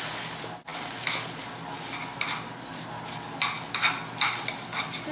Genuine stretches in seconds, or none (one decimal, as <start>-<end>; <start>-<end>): 0.0-5.1